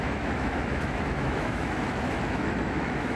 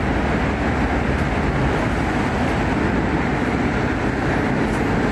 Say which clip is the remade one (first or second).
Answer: first